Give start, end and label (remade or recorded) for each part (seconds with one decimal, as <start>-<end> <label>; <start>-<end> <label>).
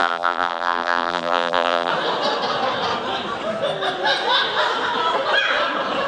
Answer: 0.0-1.9 remade; 1.9-6.1 recorded